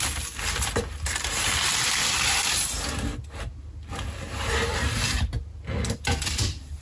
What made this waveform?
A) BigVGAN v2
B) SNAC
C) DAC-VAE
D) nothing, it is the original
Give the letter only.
D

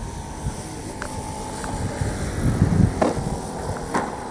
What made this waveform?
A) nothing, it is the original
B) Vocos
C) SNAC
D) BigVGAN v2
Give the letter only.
A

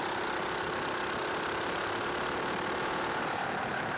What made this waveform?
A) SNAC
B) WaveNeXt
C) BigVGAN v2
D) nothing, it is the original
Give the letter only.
D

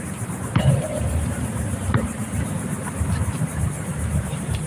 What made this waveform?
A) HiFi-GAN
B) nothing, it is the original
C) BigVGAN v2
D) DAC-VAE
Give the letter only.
C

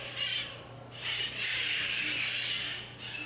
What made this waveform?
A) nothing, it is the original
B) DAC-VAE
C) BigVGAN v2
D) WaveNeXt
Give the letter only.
A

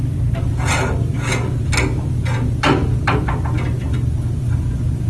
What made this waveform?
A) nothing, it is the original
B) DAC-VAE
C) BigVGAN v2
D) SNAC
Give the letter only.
A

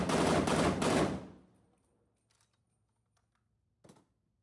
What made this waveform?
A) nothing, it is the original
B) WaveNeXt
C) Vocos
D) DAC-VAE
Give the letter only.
A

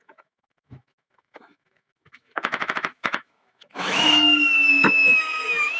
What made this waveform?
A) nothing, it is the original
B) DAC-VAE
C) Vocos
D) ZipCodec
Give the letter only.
B